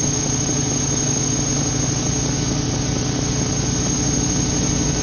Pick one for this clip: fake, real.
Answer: real